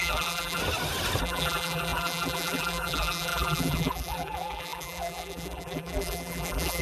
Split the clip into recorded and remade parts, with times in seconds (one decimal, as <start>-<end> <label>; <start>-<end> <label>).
0.0-0.6 remade; 0.6-1.2 recorded; 1.2-6.8 remade